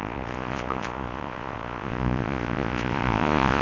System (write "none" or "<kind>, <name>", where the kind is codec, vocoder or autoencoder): vocoder, Vocos